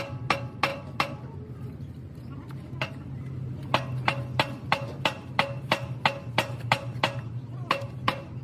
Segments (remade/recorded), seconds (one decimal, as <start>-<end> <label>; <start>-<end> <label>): 0.0-0.7 recorded; 0.7-1.5 remade; 1.5-8.4 recorded